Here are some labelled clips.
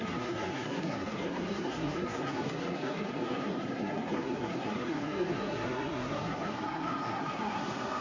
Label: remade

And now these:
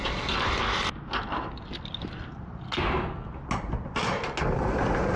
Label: recorded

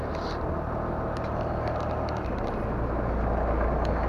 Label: recorded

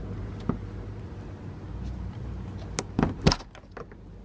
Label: recorded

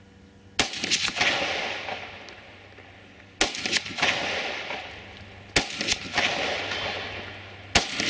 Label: recorded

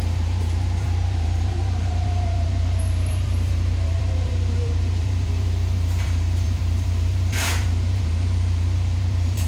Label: remade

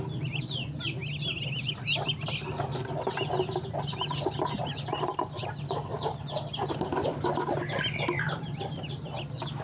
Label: recorded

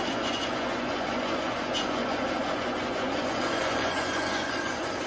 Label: remade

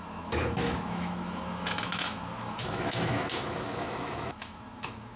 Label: remade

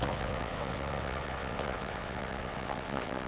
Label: remade